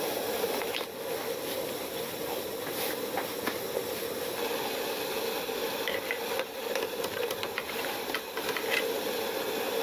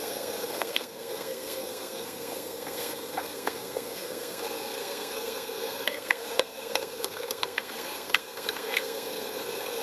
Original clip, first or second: first